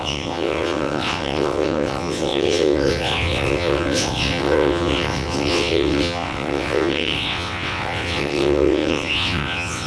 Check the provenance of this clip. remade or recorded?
remade